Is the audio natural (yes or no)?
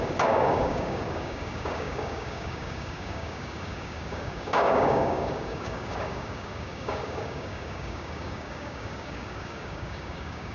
no